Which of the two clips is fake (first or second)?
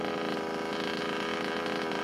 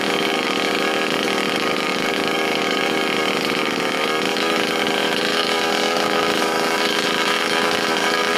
second